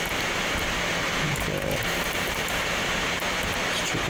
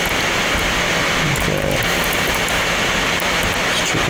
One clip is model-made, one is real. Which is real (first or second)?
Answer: second